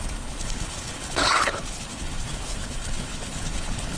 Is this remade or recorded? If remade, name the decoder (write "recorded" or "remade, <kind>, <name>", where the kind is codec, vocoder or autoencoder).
remade, codec, HILCodec